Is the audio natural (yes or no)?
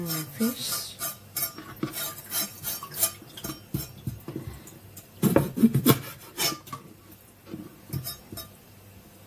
yes